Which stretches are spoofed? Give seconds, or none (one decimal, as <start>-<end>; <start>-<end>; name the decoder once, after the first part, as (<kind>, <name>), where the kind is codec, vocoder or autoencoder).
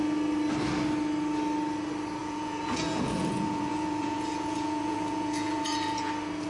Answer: 2.2-6.1 (vocoder, Vocos)